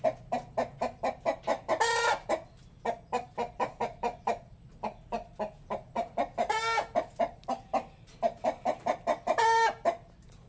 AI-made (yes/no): no